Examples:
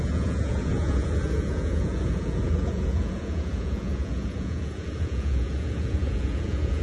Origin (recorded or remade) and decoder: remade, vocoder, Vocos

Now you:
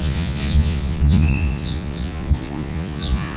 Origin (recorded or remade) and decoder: remade, vocoder, Vocos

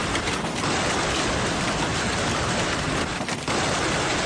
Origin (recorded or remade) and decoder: recorded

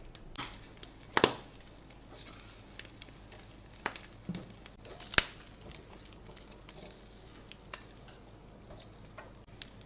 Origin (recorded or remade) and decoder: recorded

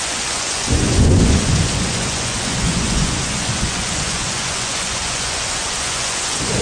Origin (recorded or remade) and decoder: remade, vocoder, Vocos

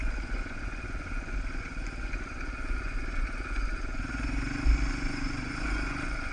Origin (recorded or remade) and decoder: remade, vocoder, Vocos